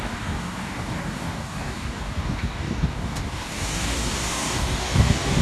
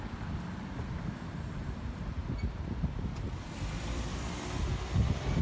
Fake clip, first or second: first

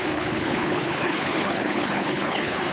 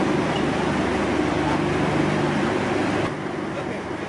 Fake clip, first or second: first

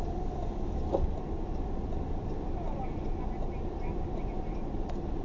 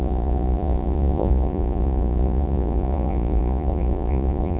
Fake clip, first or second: second